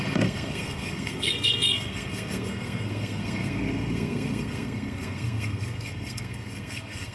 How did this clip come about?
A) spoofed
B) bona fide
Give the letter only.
A